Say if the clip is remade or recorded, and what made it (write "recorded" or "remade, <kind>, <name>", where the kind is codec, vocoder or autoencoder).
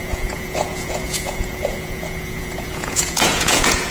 remade, vocoder, Vocos